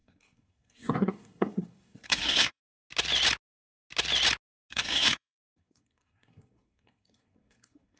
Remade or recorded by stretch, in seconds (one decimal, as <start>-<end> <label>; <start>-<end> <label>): 0.0-2.6 remade; 2.6-4.7 recorded; 4.7-8.0 remade